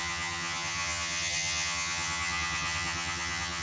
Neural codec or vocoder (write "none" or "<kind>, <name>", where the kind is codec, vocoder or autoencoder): vocoder, HiFi-GAN